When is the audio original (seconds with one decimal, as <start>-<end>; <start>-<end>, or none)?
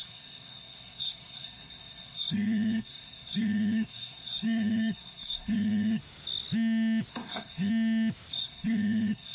6.0-7.1; 7.7-8.3